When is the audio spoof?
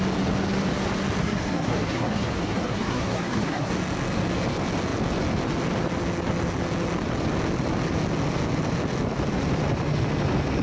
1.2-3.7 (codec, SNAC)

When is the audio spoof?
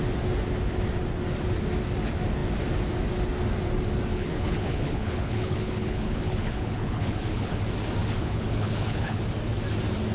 4.1-7.5 (codec, HILCodec); 8.0-9.2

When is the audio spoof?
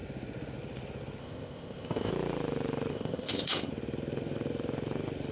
1.2-2.1 (codec, ZipCodec); 2.9-3.7